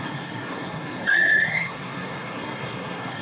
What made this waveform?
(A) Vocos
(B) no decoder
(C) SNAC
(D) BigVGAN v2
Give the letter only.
C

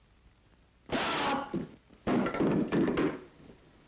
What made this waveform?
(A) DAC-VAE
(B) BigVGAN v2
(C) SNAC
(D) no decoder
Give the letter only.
D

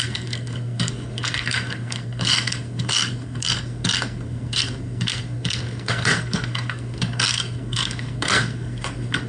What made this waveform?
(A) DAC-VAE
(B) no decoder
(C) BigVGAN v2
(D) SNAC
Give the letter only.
D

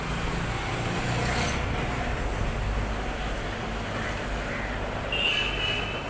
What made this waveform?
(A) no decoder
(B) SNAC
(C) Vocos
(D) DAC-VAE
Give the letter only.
A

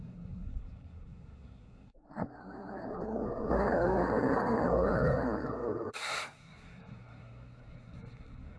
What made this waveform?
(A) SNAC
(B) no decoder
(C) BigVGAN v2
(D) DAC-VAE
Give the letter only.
A